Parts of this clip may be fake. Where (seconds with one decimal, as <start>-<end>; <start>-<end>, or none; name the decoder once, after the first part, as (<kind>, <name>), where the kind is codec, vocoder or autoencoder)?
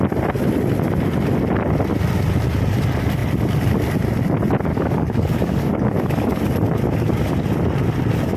4.7-6.4 (codec, DAC)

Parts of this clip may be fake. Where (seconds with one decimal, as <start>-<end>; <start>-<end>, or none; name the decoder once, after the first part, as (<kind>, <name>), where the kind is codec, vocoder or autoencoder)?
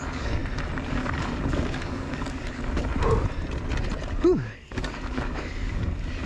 0.0-0.4 (codec, DAC); 0.9-2.9; 4.1-6.3